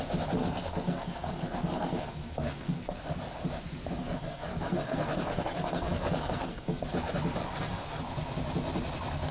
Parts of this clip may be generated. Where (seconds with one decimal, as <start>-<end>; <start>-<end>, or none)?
0.4-3.0; 4.0-6.8; 7.4-8.0